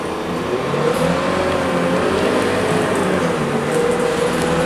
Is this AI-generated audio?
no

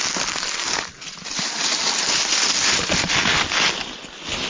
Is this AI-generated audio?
no